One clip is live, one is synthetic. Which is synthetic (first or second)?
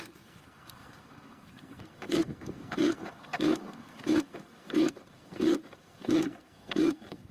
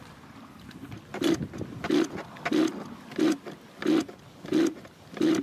first